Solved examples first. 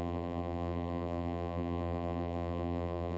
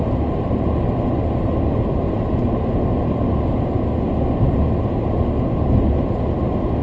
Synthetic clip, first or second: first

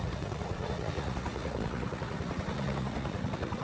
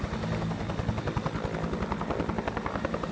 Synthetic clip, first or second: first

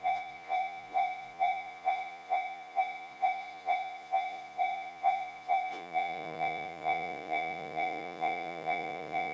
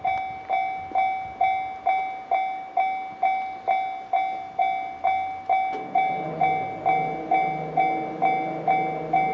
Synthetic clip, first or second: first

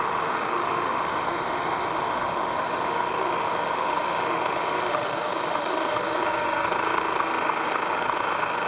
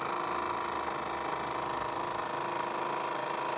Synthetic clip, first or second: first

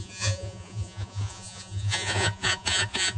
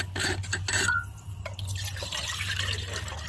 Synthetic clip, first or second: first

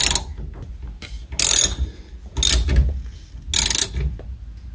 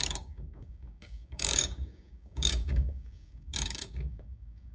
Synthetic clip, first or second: second